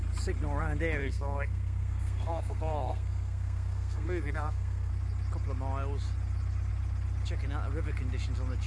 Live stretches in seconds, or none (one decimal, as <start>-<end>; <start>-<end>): 0.0-1.0; 4.9-8.7